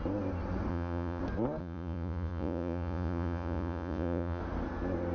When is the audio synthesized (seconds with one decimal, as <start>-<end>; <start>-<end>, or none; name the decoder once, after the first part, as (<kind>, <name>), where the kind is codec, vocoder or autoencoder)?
0.7-1.2 (vocoder, Vocos); 1.6-4.4